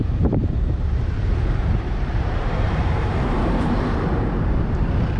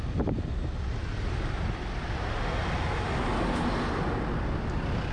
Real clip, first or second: second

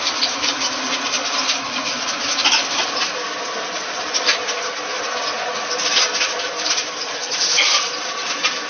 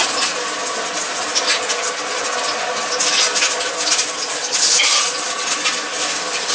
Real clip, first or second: second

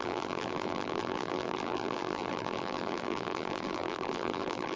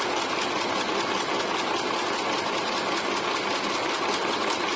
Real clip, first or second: second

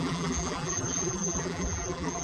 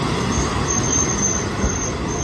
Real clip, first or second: second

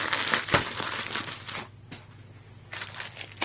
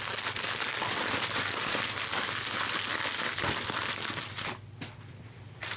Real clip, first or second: first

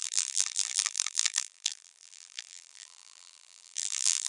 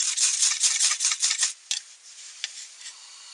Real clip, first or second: second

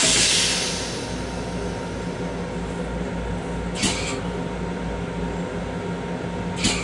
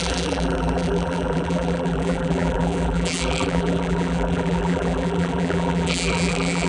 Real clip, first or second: first